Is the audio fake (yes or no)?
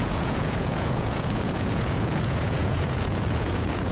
yes